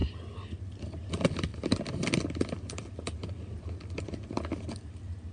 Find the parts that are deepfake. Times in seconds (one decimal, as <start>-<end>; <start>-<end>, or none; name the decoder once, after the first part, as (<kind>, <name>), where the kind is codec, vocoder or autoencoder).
none